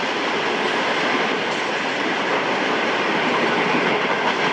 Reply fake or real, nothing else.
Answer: real